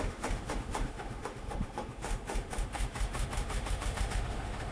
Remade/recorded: remade